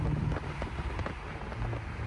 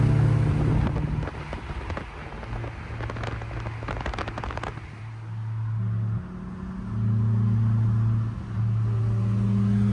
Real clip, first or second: second